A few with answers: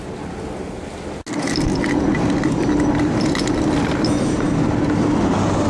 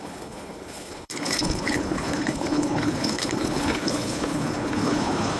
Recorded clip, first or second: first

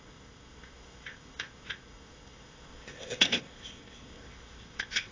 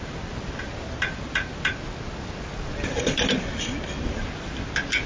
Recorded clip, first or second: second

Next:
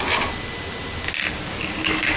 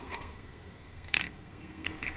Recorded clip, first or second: first